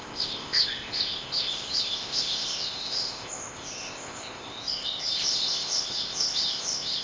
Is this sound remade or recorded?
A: remade